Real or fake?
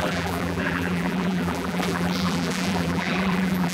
fake